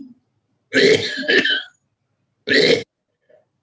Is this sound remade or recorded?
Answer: recorded